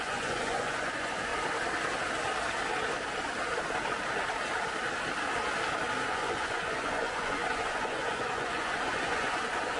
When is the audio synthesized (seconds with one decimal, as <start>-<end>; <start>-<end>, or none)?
0.0-1.3; 6.1-9.8